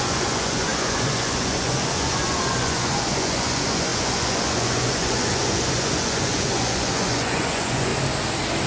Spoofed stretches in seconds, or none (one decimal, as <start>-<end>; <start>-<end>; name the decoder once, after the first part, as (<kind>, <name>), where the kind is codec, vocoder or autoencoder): 0.0-7.9 (vocoder, Vocos)